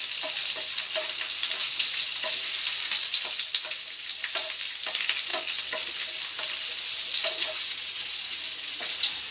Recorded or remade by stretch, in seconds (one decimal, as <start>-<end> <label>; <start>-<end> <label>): 0.0-1.6 recorded; 1.6-2.6 remade; 2.6-7.2 recorded; 7.2-9.3 remade